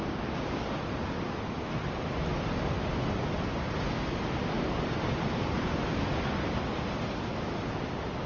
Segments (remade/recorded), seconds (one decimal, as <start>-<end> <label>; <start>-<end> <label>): 0.0-8.3 recorded